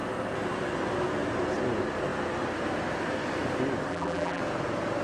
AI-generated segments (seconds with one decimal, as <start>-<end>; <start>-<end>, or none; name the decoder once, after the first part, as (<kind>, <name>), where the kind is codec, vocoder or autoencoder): 3.9-4.4 (vocoder, BigVGAN v2)